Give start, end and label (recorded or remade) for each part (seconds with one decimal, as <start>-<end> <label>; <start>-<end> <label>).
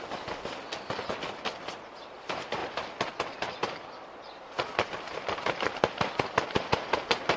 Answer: 0.0-7.4 recorded